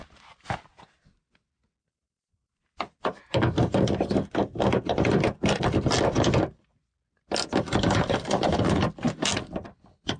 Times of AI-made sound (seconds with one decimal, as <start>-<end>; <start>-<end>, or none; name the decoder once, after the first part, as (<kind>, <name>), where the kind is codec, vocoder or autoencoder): 1.8-5.6 (vocoder, BigVGAN v2)